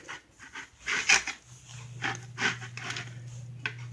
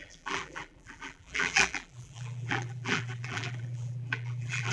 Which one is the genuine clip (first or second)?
first